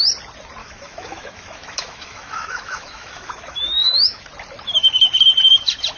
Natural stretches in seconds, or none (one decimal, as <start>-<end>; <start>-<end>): 0.0-0.6; 4.2-6.0